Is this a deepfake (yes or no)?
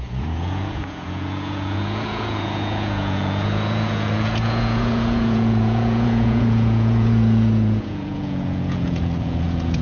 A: yes